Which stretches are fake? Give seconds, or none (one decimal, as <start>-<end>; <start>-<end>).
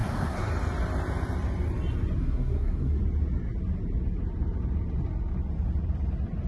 0.0-0.5; 2.2-3.0